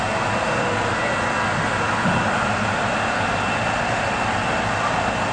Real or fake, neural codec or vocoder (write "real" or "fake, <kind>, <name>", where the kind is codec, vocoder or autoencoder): real